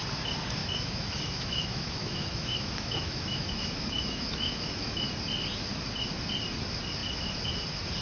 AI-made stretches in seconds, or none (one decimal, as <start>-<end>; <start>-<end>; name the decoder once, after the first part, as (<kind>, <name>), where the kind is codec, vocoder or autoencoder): 0.6-5.1 (autoencoder, DAC-VAE)